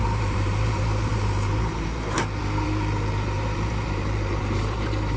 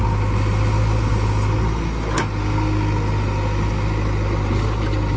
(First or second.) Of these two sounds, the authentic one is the second